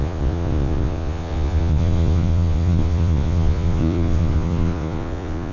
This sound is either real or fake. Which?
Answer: fake